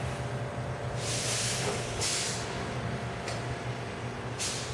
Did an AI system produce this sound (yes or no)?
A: no